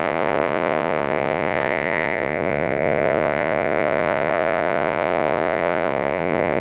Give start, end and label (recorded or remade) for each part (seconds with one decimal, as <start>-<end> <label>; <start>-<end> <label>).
0.0-6.6 remade